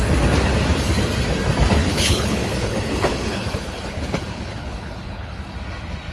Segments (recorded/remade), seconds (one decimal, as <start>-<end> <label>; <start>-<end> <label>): 0.0-1.8 recorded; 1.8-5.4 remade; 5.4-6.1 recorded